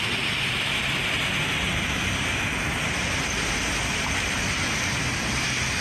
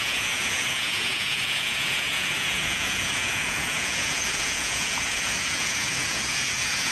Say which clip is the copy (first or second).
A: second